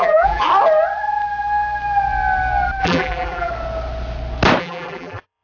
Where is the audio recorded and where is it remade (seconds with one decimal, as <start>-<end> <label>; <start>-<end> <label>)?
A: 0.0-0.5 remade; 0.5-2.8 recorded; 2.8-3.5 remade; 3.5-4.6 recorded; 4.6-5.4 remade